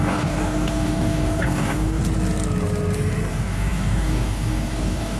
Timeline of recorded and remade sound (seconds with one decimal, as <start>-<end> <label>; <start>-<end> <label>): 0.0-2.0 remade; 2.0-3.3 recorded; 3.3-5.2 remade